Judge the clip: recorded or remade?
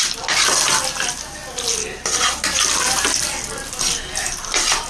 recorded